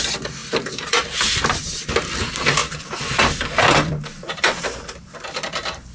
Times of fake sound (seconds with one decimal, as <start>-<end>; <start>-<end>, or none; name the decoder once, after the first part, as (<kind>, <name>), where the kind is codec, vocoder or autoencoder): 0.4-1.4 (vocoder, BigVGAN v2); 2.6-5.9

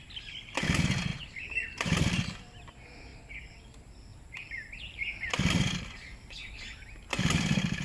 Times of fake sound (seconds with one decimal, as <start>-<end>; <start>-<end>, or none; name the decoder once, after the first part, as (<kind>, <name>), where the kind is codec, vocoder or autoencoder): 1.1-2.7 (vocoder, BigVGAN v2); 3.1-3.6; 4.1-6.5

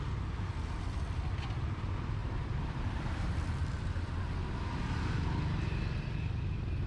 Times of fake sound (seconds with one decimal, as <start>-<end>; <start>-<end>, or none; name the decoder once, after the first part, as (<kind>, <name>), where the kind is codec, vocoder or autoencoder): 2.2-4.2 (vocoder, BigVGAN v2)

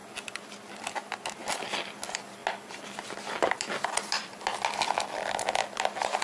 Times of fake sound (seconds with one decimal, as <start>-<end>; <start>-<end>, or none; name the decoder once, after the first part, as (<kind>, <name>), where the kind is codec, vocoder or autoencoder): none

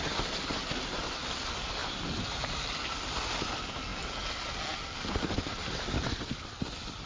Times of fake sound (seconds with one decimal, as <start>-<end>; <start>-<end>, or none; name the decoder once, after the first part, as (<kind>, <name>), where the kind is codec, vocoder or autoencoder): none